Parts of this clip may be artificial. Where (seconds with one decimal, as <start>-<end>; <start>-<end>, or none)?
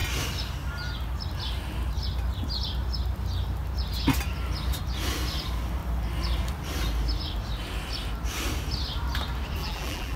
9.6-10.2